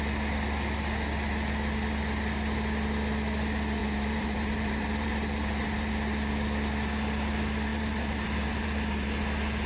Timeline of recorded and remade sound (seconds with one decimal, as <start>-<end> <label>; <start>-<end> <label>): 0.0-3.8 recorded; 3.8-5.9 remade; 5.9-7.7 recorded; 7.7-9.2 remade; 9.2-9.7 recorded